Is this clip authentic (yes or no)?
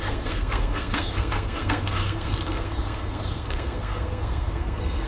no